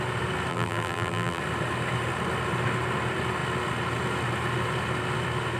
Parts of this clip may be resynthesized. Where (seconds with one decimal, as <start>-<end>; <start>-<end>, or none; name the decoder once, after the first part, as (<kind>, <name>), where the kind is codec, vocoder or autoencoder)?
0.5-1.4 (vocoder, BigVGAN v2)